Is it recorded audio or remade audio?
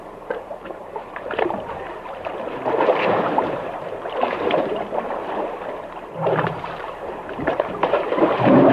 remade